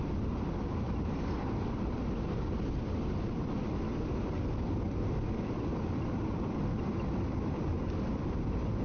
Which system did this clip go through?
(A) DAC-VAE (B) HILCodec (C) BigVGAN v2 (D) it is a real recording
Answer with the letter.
D